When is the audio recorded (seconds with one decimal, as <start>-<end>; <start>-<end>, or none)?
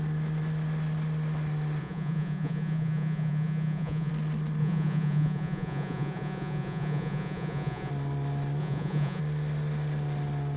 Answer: 0.0-1.8; 4.1-4.6; 7.9-8.6; 9.2-10.6